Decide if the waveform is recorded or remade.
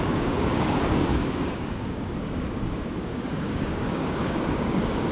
remade